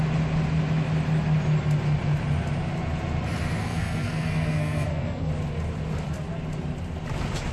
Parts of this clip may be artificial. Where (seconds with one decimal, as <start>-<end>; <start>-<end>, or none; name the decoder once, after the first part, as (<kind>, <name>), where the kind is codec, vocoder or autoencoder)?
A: 3.6-5.3 (codec, SNAC)